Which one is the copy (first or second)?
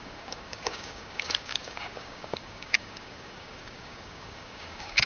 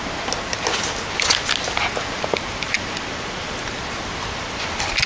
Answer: first